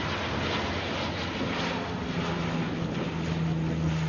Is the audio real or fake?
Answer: real